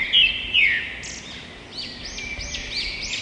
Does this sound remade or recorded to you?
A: recorded